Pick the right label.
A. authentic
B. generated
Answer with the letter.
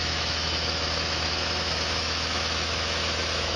B